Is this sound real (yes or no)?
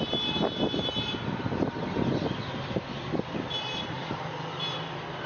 yes